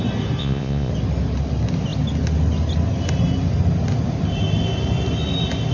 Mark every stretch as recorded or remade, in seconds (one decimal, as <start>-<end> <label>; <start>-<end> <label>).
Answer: 0.0-0.4 recorded; 0.4-0.9 remade; 0.9-5.7 recorded